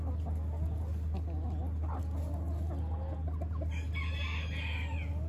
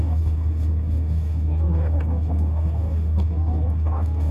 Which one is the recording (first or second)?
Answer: first